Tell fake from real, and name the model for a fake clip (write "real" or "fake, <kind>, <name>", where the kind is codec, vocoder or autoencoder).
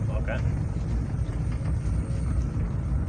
real